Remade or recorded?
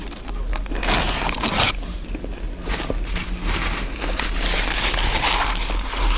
recorded